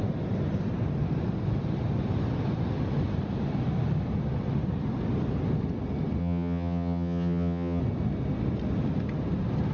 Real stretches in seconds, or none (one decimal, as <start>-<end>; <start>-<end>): 0.0-6.2; 7.8-9.7